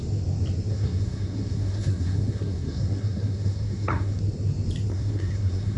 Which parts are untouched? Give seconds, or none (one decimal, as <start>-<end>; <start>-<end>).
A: 0.0-0.7; 4.2-4.9